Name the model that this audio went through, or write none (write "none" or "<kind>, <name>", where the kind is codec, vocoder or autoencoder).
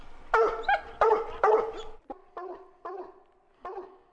none